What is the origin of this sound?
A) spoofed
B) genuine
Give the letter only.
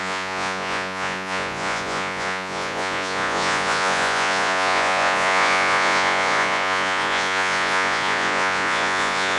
A